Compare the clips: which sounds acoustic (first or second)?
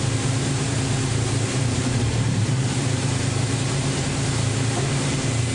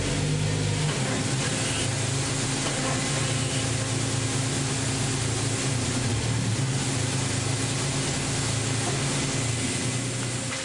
second